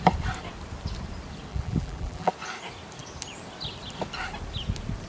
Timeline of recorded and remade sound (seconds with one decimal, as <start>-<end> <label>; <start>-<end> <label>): 0.0-1.5 recorded; 1.5-2.3 remade; 2.3-5.1 recorded